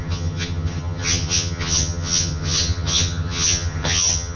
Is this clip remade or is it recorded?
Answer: remade